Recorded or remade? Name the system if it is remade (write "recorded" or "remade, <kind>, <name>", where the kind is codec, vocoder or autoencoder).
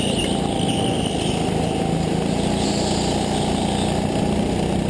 recorded